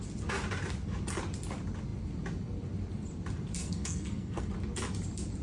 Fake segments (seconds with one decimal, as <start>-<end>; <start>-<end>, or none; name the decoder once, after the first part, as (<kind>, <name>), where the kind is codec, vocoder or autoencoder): 3.6-4.5 (codec, SNAC)